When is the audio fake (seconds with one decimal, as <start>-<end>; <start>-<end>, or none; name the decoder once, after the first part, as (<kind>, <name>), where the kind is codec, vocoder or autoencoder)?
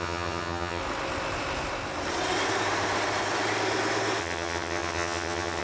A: 0.0-0.8 (vocoder, HiFi-GAN); 4.2-5.6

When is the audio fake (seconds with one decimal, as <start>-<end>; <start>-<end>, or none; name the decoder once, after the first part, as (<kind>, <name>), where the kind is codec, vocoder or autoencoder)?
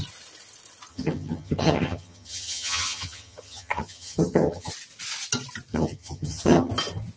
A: 0.9-4.7 (vocoder, HiFi-GAN); 5.7-6.7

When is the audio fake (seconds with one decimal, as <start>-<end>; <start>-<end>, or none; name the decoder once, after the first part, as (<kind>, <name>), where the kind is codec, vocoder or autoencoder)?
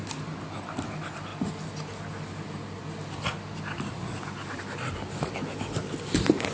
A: none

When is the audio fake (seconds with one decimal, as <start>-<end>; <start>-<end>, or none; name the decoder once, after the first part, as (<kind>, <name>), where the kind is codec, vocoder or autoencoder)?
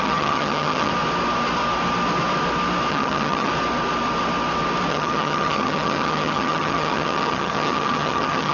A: 0.0-0.9 (vocoder, HiFi-GAN); 2.9-3.5; 4.9-8.5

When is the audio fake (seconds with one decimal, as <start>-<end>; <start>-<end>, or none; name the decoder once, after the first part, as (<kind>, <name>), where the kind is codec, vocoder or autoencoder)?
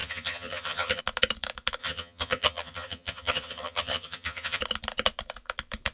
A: 0.0-1.0 (vocoder, HiFi-GAN); 1.8-4.6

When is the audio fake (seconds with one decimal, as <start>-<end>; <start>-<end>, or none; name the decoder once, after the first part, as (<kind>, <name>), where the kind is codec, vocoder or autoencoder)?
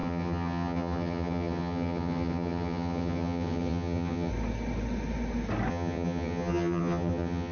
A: 0.0-4.3 (vocoder, HiFi-GAN); 5.7-7.5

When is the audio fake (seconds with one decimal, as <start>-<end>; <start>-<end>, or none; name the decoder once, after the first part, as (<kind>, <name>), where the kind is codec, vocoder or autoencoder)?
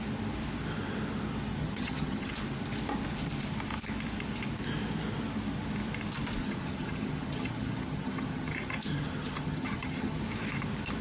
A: 1.6-2.3 (vocoder, HiFi-GAN); 6.4-10.2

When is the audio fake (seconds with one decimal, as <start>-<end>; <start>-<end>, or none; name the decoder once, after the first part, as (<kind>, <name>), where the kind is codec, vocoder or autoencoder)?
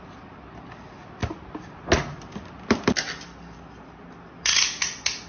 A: none